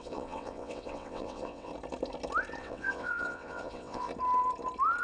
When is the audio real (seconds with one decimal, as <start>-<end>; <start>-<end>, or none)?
1.7-2.6; 4.1-5.0

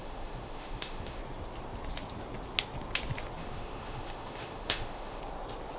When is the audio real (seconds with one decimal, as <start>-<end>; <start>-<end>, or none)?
1.2-3.4; 5.2-5.8

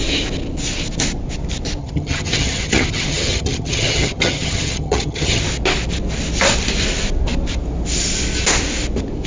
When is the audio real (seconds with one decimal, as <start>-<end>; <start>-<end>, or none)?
0.0-1.8; 5.4-9.3